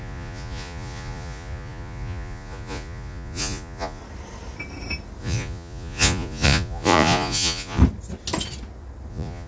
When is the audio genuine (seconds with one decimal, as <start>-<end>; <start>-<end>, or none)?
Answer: 4.0-5.2; 7.8-9.1